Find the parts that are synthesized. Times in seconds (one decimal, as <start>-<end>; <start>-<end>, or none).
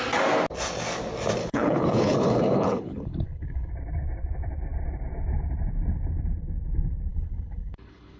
1.4-3.7; 7.1-8.2